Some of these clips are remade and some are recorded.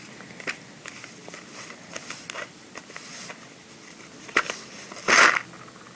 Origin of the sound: recorded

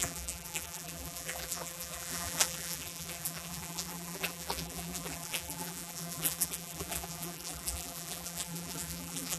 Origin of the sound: remade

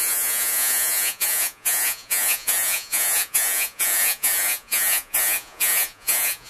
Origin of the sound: remade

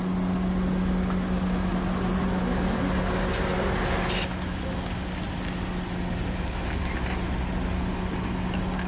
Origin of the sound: recorded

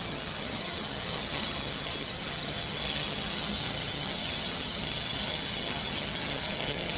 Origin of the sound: remade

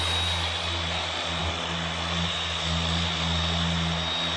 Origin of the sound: recorded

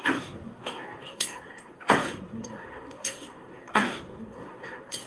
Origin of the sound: remade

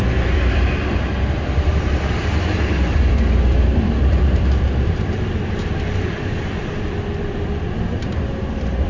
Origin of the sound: remade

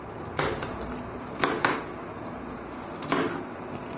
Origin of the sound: recorded